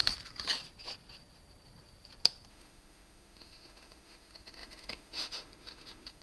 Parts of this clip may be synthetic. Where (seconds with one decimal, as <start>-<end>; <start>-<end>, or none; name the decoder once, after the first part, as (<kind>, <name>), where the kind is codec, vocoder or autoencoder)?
2.5-6.2 (autoencoder, DAC-VAE)